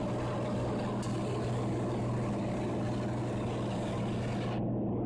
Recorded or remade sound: recorded